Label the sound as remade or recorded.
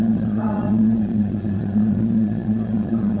remade